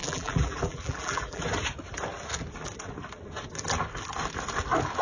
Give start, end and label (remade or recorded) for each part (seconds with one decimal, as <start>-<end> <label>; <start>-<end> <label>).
0.0-1.4 remade; 1.4-5.0 recorded